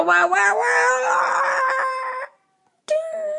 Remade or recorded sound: recorded